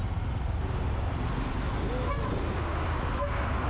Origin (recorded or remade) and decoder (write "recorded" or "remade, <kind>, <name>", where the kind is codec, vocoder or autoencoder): recorded